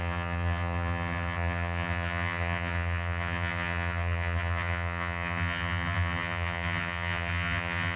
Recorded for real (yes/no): no